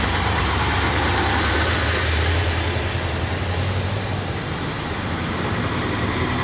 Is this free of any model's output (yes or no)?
no